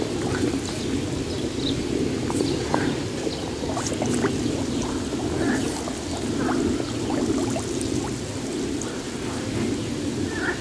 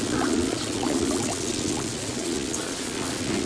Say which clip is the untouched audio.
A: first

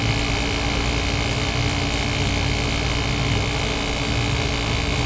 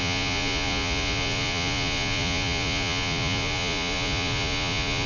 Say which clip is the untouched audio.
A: first